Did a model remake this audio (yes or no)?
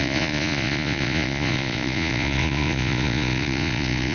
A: yes